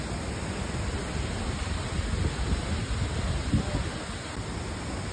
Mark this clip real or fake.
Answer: real